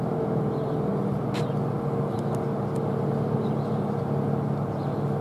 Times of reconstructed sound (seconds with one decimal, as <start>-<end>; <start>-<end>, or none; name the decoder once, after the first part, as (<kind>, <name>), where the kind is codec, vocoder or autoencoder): none